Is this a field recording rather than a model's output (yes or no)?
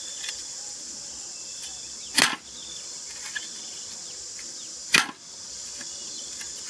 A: yes